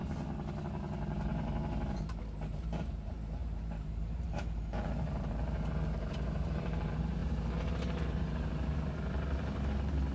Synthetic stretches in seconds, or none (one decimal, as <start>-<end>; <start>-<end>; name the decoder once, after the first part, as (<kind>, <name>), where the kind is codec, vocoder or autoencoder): 0.6-10.1 (vocoder, BigVGAN v2)